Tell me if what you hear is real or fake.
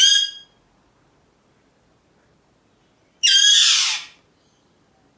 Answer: real